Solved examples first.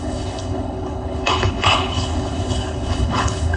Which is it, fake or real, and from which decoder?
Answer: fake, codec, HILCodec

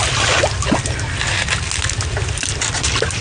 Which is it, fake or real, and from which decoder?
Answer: real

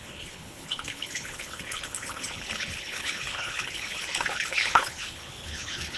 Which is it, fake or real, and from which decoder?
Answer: fake, codec, HILCodec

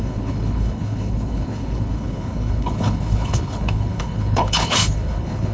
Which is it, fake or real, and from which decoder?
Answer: fake, codec, HILCodec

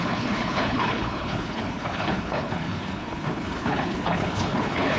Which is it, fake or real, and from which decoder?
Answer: fake, codec, HILCodec